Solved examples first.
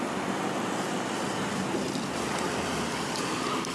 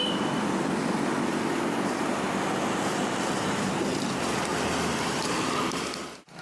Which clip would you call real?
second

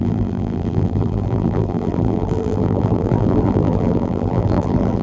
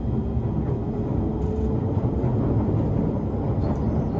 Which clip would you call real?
second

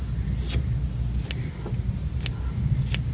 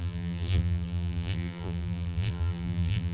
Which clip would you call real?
first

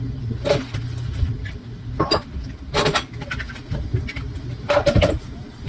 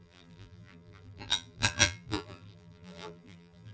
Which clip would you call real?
first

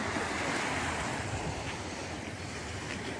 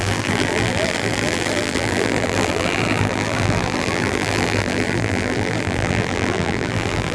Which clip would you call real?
first